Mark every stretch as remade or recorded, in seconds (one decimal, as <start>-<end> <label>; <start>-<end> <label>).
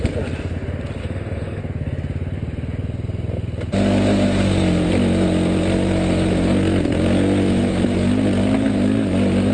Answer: 0.0-1.0 recorded; 1.0-1.6 remade; 1.6-9.5 recorded